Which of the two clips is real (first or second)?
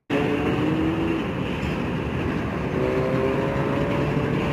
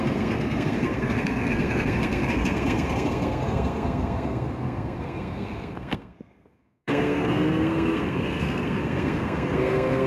first